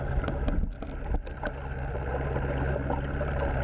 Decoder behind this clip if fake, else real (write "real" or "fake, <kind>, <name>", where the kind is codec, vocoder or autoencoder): real